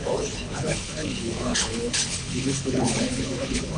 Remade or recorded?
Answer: remade